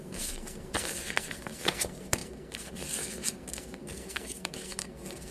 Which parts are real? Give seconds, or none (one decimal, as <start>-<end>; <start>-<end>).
none